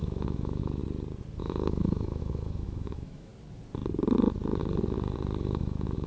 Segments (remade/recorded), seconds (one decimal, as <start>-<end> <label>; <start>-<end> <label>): 0.0-0.8 remade; 0.8-1.4 recorded; 1.4-3.3 remade; 3.3-5.4 recorded; 5.4-6.1 remade